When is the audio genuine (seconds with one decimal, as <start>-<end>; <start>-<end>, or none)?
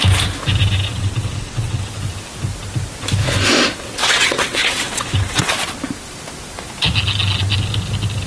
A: 0.0-0.9; 1.9-4.0; 5.5-8.3